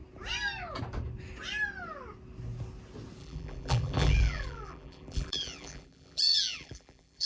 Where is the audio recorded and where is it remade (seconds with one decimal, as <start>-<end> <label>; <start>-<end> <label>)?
0.0-3.2 recorded; 3.2-7.3 remade